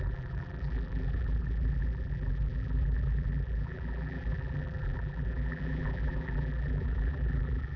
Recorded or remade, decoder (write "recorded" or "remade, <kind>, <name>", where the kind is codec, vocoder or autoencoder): remade, vocoder, BigVGAN v2